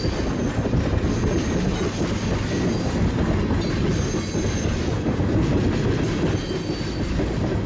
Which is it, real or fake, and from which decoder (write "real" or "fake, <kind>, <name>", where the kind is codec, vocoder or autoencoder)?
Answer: real